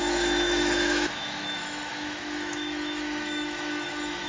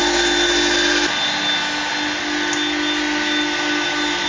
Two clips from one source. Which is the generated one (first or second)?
first